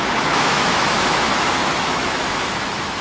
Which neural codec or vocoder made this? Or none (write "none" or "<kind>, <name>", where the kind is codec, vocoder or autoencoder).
autoencoder, DAC-VAE